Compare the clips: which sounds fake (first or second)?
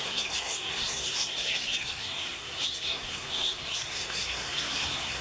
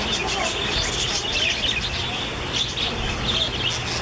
first